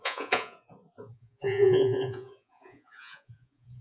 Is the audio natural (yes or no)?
no